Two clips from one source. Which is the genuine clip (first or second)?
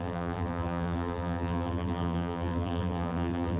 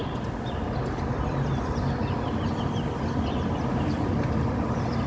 second